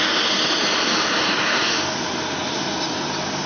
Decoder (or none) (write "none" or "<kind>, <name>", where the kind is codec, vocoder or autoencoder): none